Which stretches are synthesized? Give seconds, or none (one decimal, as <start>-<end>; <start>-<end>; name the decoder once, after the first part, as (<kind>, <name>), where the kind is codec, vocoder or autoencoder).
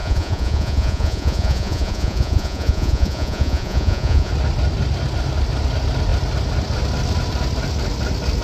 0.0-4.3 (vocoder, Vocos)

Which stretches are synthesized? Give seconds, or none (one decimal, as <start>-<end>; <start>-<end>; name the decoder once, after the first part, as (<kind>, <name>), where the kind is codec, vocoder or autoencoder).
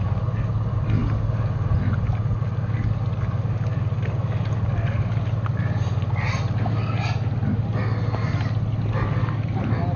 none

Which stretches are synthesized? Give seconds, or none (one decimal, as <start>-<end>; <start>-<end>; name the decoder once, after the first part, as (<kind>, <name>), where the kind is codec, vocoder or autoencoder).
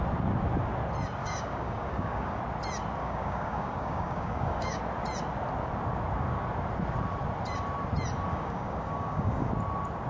1.2-2.4 (codec, DAC); 3.0-4.8; 8.3-9.5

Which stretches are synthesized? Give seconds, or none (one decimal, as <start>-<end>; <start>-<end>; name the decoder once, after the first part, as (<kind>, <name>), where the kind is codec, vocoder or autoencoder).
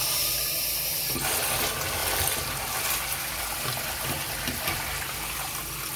2.0-5.6 (vocoder, BigVGAN v2)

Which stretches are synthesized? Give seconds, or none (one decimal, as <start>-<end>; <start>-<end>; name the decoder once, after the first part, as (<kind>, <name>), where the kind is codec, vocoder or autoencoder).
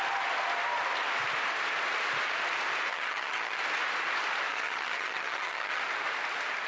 2.9-3.6 (vocoder, HiFi-GAN); 4.5-5.8